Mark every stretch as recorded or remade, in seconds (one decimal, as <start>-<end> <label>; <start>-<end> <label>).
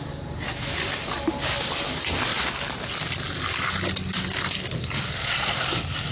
0.0-6.1 recorded